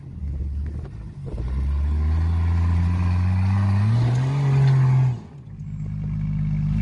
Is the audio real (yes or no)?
yes